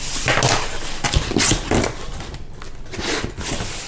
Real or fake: real